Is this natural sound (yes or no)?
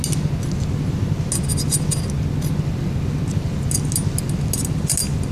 yes